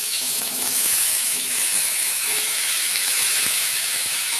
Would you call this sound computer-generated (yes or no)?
yes